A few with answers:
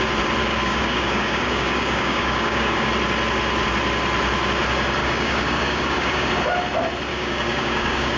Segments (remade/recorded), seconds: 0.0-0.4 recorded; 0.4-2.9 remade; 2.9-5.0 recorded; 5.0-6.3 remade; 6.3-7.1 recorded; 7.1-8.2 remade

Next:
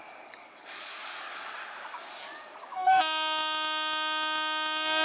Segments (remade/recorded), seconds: 0.0-3.0 remade; 3.0-5.0 recorded

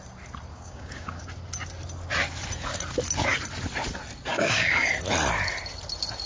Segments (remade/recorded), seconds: 0.0-0.5 recorded; 0.5-1.2 remade; 1.2-4.3 recorded; 4.3-4.9 remade; 4.9-6.3 recorded

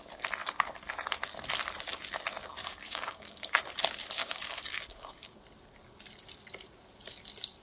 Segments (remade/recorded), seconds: 0.0-2.6 recorded; 2.6-3.6 remade; 3.6-4.2 recorded; 4.2-5.4 remade; 5.4-7.6 recorded

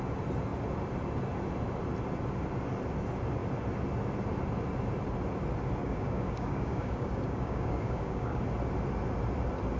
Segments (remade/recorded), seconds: 0.0-5.8 recorded; 5.8-8.4 remade; 8.4-9.8 recorded

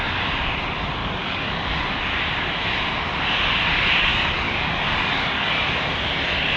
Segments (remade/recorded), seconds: 0.0-1.0 recorded; 1.0-2.0 remade; 2.0-4.1 recorded; 4.1-5.7 remade; 5.7-6.6 recorded

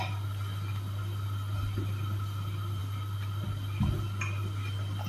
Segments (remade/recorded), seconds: 0.0-5.1 recorded

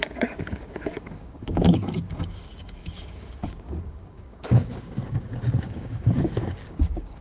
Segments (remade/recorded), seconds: 0.0-7.2 remade